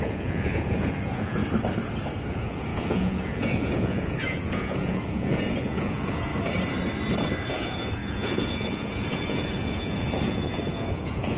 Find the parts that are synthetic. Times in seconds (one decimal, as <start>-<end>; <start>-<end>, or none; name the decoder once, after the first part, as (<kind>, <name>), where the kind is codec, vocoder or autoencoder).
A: 0.0-1.4 (vocoder, Vocos); 2.3-6.3; 7.5-11.4